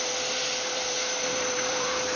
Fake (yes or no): yes